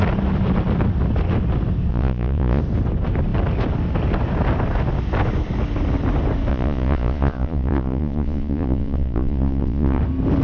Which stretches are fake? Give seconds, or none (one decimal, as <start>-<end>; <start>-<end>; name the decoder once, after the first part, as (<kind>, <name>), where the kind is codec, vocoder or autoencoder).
1.9-2.6 (vocoder, Vocos); 6.5-10.0

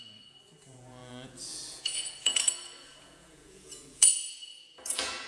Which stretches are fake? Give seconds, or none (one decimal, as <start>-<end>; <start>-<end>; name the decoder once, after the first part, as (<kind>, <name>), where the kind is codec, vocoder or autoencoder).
0.0-5.3 (vocoder, Vocos)

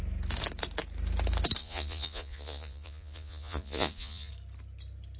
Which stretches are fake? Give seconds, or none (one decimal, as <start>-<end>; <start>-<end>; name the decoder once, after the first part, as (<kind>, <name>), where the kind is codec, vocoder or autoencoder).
1.6-4.3 (vocoder, Vocos)

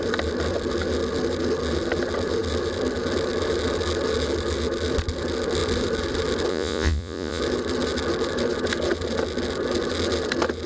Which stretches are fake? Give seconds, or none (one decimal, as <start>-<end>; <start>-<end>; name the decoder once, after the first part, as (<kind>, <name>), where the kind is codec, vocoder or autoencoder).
6.5-7.4 (vocoder, Vocos)

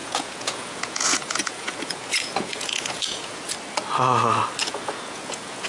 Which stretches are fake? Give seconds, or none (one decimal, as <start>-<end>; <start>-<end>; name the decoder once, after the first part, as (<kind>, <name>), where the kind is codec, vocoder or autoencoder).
0.0-3.4 (vocoder, Vocos); 4.6-5.7

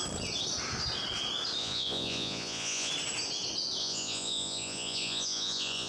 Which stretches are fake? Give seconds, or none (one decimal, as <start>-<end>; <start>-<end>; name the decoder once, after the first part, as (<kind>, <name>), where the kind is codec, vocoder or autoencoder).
1.6-2.9 (vocoder, Vocos); 3.8-5.9

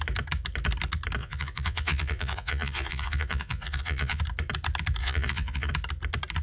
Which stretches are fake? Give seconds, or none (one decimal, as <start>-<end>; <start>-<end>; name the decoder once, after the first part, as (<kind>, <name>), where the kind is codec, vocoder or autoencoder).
1.2-4.2 (vocoder, Vocos); 5.0-5.7

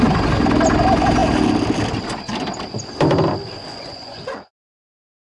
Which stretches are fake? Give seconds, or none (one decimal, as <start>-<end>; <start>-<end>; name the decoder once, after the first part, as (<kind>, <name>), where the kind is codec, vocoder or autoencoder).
3.7-4.7 (vocoder, Vocos)